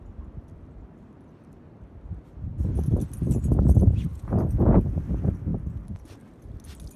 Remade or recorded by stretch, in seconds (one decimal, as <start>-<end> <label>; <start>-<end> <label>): 0.0-4.1 recorded; 4.1-5.0 remade; 5.0-7.0 recorded

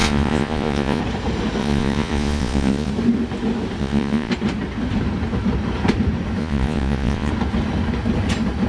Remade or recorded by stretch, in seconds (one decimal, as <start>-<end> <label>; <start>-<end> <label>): 0.0-1.0 remade; 1.0-1.6 recorded; 1.6-2.9 remade; 2.9-3.8 recorded; 3.8-4.3 remade; 4.3-6.4 recorded; 6.4-7.3 remade; 7.3-8.7 recorded

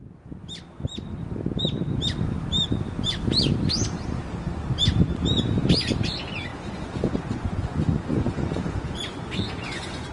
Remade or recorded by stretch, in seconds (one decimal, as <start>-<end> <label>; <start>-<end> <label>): 0.0-6.5 recorded; 6.5-10.1 remade

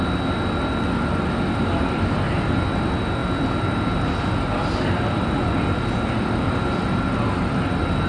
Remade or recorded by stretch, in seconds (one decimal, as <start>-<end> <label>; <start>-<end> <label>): 0.0-8.1 recorded